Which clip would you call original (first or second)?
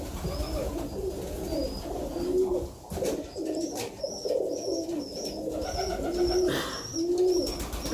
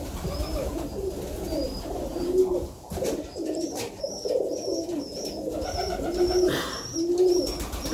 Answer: first